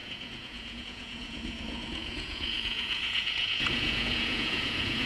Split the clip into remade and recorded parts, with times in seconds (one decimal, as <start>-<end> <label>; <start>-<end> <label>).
0.0-5.1 remade